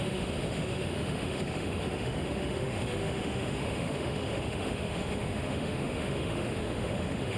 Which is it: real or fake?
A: fake